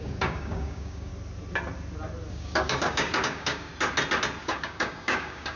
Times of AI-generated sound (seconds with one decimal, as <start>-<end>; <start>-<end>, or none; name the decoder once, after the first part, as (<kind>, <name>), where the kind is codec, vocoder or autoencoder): 0.0-1.1 (codec, DAC); 2.3-3.7; 4.4-5.6